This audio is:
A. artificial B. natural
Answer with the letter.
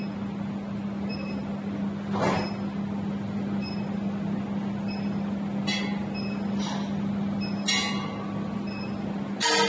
B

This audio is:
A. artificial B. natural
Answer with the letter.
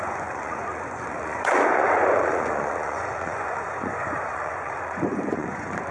A